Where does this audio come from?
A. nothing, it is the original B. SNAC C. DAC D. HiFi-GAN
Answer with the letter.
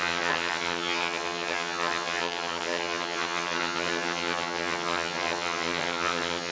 D